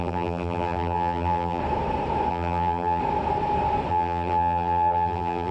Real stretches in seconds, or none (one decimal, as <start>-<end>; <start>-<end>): 1.6-2.3; 3.0-3.9